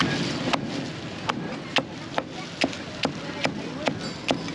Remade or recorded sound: recorded